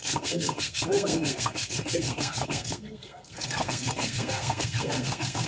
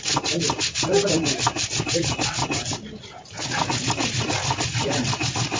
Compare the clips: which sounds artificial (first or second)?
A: first